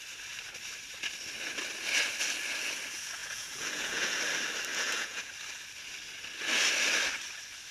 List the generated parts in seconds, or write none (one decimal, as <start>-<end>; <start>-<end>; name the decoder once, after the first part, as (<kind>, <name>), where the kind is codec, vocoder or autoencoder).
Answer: 3.2-4.2 (vocoder, Vocos); 4.7-5.3